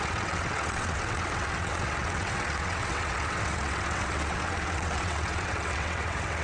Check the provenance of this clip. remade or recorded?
remade